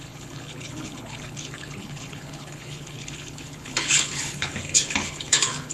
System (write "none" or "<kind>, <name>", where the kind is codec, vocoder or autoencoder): codec, HILCodec